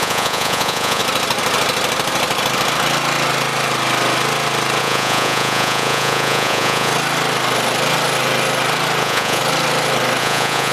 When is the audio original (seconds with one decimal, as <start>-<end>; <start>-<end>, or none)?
1.0-4.8; 6.9-9.0; 9.4-10.2